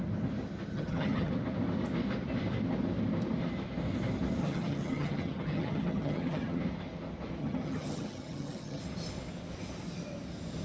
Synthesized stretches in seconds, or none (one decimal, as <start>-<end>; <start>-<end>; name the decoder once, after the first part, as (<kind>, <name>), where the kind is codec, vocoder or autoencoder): 0.7-1.3 (vocoder, HiFi-GAN); 4.4-6.6; 7.4-8.8